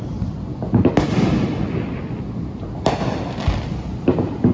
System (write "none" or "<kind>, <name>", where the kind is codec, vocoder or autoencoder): none